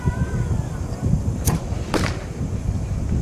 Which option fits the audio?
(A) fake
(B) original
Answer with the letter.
A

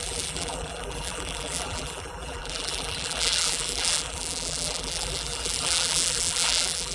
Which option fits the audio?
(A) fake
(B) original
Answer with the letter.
A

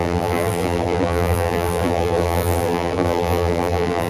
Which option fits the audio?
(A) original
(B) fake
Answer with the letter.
B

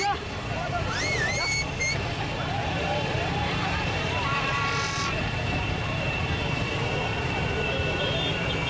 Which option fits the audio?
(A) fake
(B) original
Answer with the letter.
A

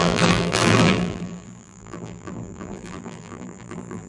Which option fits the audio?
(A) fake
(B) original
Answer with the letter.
A